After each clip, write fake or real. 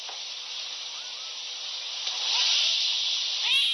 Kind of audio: real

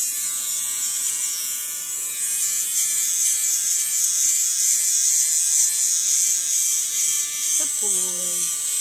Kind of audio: fake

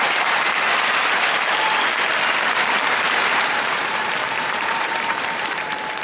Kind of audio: fake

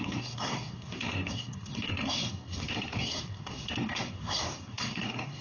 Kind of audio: fake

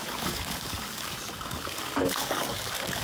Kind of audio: fake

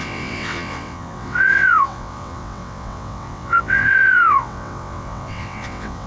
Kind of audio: fake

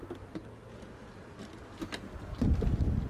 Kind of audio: real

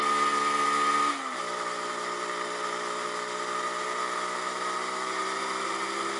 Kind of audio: real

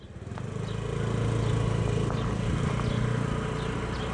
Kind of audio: real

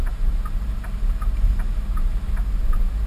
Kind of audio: fake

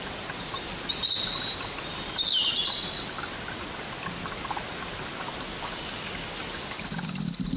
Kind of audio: real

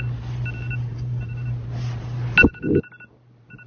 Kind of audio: real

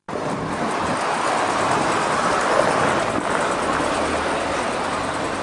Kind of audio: real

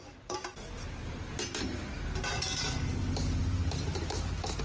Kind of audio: real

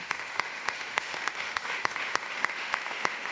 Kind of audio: fake